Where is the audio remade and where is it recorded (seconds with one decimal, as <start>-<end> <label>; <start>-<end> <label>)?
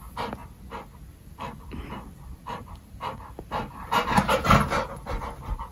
0.0-0.4 recorded; 0.4-3.8 remade; 3.8-5.7 recorded